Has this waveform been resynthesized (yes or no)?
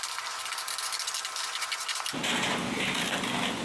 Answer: no